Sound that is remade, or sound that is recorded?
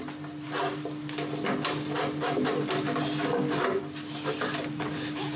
recorded